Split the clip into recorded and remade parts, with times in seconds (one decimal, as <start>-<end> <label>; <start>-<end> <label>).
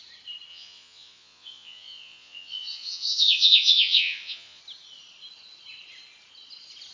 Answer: 0.0-0.5 recorded; 0.5-4.6 remade; 4.6-6.9 recorded